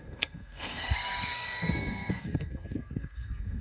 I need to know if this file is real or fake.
fake